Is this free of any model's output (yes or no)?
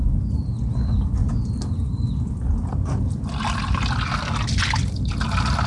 yes